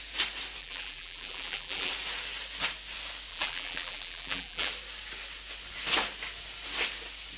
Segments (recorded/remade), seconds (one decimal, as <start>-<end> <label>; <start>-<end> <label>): 0.0-0.6 recorded; 0.6-1.9 remade; 1.9-3.3 recorded; 3.3-4.7 remade; 4.7-7.4 recorded